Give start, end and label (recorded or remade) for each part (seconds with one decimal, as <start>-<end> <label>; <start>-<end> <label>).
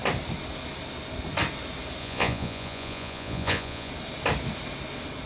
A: 0.0-2.0 recorded; 2.0-3.9 remade; 3.9-5.3 recorded